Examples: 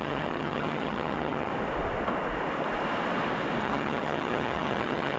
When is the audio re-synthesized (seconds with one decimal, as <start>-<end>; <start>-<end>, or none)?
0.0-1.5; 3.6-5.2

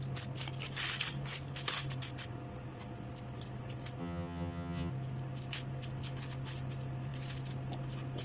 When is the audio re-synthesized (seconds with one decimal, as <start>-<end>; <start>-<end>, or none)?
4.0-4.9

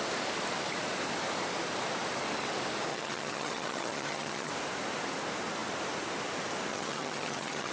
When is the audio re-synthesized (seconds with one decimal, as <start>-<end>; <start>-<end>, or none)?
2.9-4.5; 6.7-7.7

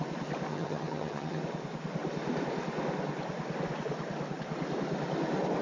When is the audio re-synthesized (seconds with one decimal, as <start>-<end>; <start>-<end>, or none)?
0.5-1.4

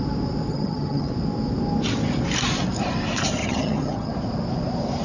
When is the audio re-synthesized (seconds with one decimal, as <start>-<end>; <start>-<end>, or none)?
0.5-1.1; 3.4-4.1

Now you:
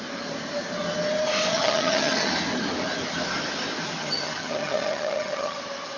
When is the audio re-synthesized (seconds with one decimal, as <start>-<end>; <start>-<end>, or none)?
1.5-2.3; 4.0-5.6